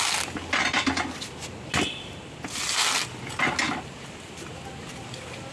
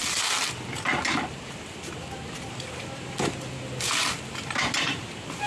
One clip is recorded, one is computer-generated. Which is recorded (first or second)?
first